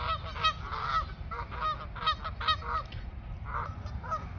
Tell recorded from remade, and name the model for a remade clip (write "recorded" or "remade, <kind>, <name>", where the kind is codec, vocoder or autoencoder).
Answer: recorded